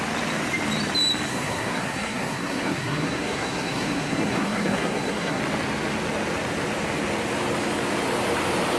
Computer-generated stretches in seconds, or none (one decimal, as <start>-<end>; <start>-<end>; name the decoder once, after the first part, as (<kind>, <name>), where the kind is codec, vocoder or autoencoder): 1.3-5.4 (codec, SNAC)